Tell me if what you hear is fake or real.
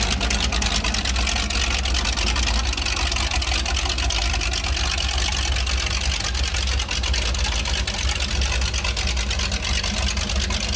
real